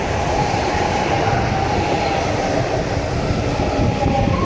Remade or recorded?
recorded